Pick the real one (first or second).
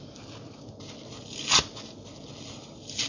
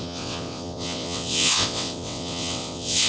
first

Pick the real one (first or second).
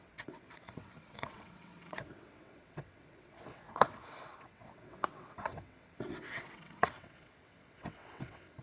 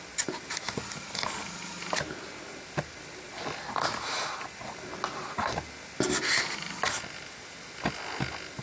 second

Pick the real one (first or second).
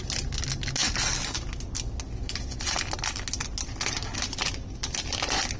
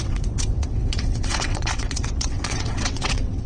first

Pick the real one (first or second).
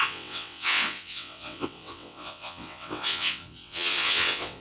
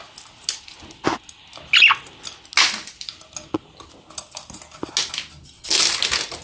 second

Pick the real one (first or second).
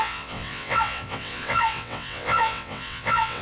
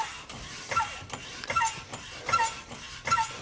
second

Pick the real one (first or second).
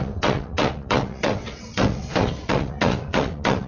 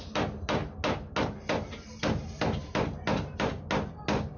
second